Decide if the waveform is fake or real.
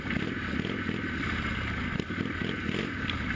real